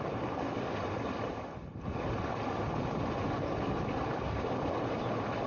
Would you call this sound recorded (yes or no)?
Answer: yes